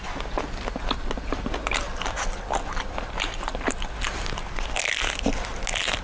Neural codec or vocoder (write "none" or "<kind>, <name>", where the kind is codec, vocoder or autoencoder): none